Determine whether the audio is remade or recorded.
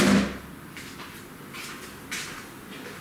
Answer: recorded